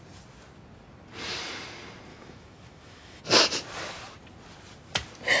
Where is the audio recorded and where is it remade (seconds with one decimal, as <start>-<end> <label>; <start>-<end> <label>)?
0.0-2.1 recorded; 2.1-3.2 remade; 3.2-5.4 recorded